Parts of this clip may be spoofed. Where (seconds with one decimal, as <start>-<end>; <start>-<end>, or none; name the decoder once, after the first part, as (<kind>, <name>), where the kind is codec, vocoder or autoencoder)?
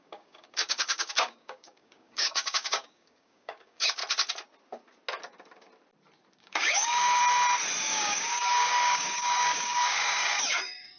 0.0-4.0 (codec, DAC); 6.4-7.2; 7.8-11.0